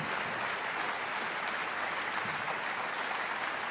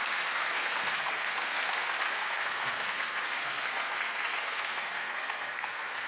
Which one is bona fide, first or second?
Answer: first